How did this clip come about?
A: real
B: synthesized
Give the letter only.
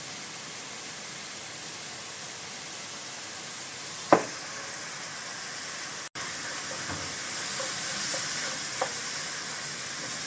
A